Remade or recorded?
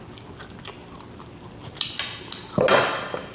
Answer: recorded